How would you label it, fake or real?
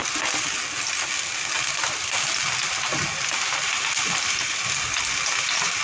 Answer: real